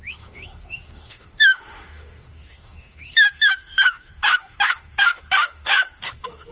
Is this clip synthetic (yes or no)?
yes